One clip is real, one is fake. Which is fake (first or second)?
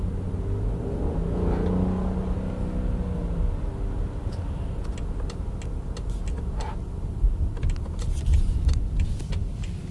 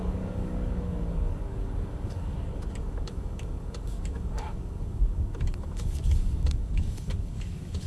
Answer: second